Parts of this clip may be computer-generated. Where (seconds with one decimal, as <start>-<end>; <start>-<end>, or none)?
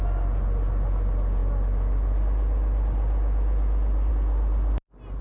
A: none